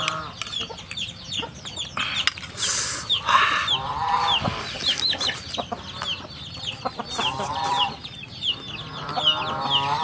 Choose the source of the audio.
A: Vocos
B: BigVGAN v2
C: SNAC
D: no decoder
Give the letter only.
D